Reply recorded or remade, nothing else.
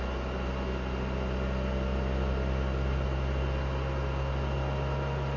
recorded